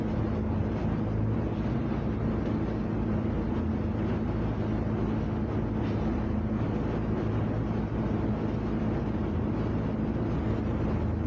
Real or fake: real